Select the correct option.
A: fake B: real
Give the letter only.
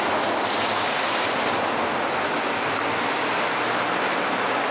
B